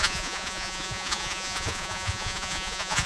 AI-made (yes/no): yes